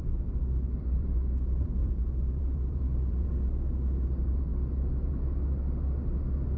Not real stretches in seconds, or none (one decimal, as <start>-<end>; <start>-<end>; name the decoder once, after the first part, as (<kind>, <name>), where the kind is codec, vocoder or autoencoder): 0.0-3.3 (vocoder, BigVGAN v2)